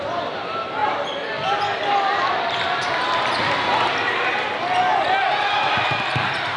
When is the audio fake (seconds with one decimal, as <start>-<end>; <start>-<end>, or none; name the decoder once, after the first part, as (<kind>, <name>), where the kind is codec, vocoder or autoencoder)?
0.8-4.8 (vocoder, BigVGAN v2)